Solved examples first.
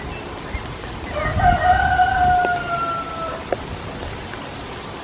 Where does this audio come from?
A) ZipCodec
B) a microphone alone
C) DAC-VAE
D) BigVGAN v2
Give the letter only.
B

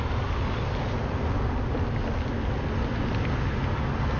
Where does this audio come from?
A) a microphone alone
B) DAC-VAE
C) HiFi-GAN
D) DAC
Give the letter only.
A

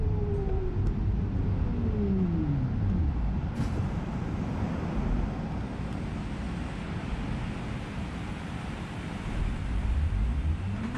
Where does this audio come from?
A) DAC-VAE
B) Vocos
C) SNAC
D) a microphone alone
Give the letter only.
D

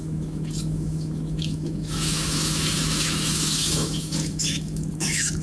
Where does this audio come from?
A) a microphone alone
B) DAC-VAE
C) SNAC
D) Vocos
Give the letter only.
B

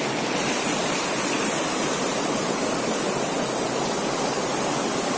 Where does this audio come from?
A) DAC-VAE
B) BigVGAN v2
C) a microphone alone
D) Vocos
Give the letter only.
C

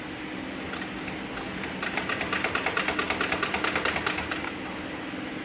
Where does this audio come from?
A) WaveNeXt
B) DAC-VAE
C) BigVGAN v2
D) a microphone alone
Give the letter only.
D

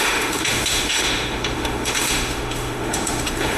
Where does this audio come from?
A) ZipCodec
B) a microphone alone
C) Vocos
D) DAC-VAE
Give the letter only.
D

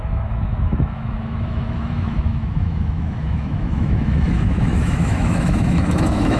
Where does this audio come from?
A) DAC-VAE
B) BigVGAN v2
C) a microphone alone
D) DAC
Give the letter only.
A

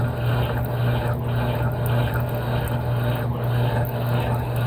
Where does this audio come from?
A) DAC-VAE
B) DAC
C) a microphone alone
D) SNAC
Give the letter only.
C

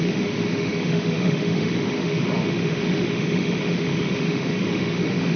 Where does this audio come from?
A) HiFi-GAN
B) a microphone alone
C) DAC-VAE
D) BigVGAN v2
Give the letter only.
C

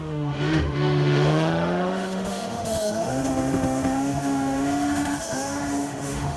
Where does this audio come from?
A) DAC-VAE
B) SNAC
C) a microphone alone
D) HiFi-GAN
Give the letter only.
A